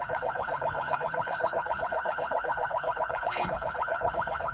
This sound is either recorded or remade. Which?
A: remade